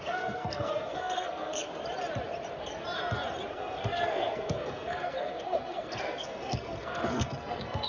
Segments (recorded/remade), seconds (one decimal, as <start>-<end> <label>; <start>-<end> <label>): 0.0-1.7 remade; 1.7-3.5 recorded; 3.5-7.9 remade